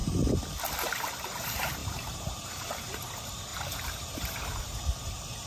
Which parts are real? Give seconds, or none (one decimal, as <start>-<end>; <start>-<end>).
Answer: 0.0-1.8; 3.1-3.5; 4.6-5.5